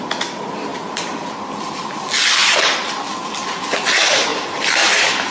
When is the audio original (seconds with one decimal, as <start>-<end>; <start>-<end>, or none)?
0.0-4.3